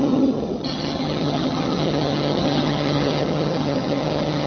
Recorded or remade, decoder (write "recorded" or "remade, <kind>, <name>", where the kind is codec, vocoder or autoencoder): remade, vocoder, HiFi-GAN